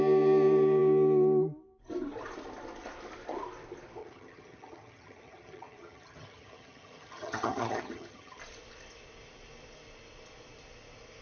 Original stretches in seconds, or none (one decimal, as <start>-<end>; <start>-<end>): 0.0-4.0; 8.4-11.2